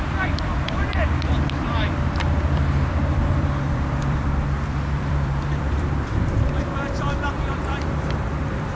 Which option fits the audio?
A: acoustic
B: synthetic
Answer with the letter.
B